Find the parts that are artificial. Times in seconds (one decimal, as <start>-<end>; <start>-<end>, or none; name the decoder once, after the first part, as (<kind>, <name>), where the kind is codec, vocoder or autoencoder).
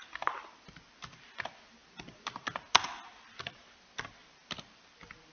none